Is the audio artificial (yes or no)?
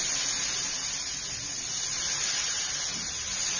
no